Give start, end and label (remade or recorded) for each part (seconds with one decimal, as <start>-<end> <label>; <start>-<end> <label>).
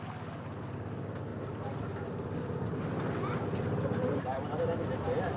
0.0-1.3 recorded; 1.3-4.5 remade; 4.5-5.4 recorded